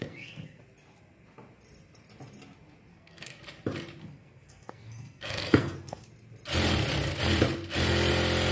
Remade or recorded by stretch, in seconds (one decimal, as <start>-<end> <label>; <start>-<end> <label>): 0.0-0.6 remade; 0.6-2.9 recorded; 2.9-3.4 remade; 3.4-4.0 recorded; 4.0-6.1 remade; 6.1-8.5 recorded